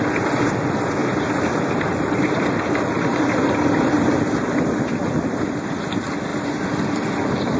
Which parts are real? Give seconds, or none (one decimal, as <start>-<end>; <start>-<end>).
0.0-1.0; 5.4-7.6